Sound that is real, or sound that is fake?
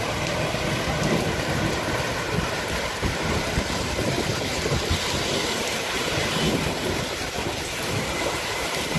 real